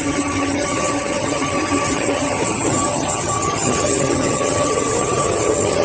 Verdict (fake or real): fake